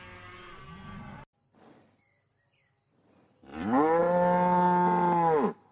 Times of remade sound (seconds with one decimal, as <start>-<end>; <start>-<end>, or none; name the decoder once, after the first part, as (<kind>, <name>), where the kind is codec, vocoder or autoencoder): none